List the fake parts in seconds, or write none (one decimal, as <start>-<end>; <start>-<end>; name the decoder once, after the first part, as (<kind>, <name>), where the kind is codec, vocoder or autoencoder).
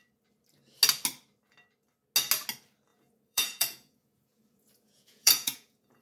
2.9-6.0 (vocoder, Vocos)